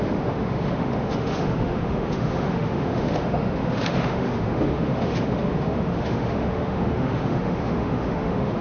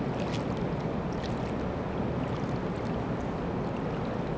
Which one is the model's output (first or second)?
first